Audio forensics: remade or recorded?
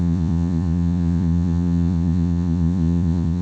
remade